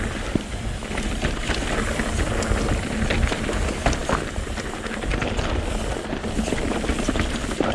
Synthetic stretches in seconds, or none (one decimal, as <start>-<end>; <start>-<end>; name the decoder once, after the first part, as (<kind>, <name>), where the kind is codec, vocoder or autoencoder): none